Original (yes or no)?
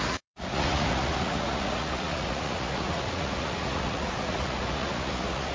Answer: no